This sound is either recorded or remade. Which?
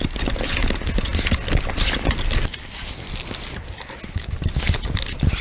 recorded